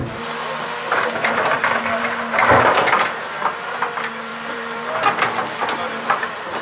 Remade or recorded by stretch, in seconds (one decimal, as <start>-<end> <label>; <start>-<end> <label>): 0.0-4.3 recorded; 4.3-5.1 remade; 5.1-6.6 recorded